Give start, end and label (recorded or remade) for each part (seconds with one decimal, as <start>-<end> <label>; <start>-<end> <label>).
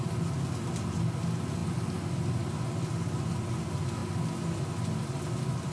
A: 0.0-5.7 recorded